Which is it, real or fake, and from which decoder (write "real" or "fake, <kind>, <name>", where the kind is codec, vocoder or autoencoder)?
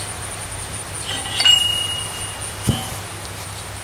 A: real